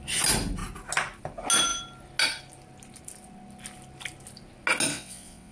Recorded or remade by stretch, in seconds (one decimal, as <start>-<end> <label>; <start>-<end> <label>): 0.0-4.9 recorded; 4.9-5.5 remade